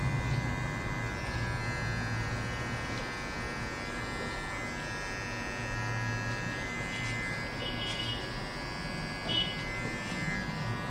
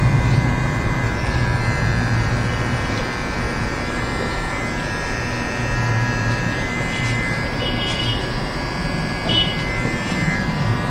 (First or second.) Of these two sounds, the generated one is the second